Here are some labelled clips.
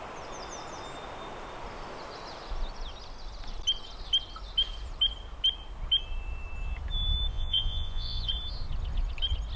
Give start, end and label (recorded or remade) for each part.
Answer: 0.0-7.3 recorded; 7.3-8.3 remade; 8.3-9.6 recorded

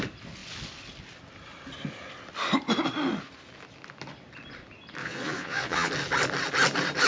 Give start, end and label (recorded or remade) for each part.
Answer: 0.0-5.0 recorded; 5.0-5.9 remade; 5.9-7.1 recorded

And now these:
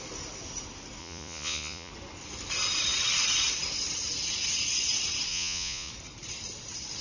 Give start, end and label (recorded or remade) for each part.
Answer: 0.0-1.0 recorded; 1.0-1.9 remade; 1.9-5.3 recorded; 5.3-5.9 remade; 5.9-7.0 recorded

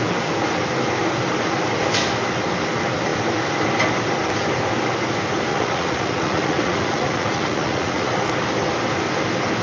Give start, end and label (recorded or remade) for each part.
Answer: 0.0-5.5 recorded; 5.5-8.1 remade; 8.1-9.6 recorded

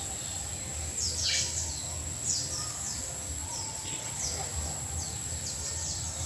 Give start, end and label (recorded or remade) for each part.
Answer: 0.0-3.4 recorded; 3.4-4.1 remade; 4.1-6.3 recorded

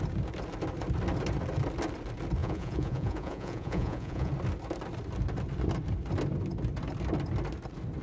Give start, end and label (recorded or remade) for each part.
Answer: 0.0-2.4 recorded; 2.4-4.3 remade; 4.3-8.0 recorded

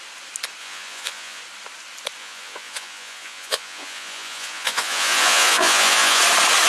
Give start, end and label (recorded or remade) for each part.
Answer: 0.0-0.6 recorded; 0.6-1.4 remade; 1.4-2.2 recorded; 2.2-6.2 remade; 6.2-6.7 recorded